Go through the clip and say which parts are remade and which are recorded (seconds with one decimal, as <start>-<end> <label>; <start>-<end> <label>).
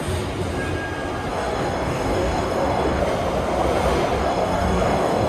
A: 0.0-1.3 recorded; 1.3-3.0 remade; 3.0-4.2 recorded; 4.2-5.3 remade